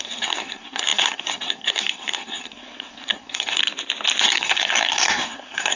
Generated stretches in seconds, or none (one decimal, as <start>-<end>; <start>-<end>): 0.0-3.6; 4.2-5.8

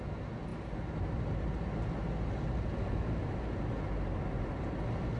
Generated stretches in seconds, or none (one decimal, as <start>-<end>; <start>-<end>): none

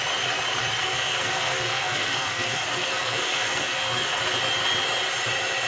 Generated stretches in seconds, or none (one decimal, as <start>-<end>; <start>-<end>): 0.8-4.2

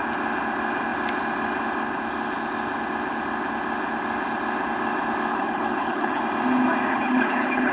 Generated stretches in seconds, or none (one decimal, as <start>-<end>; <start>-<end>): 5.3-6.2; 6.9-7.7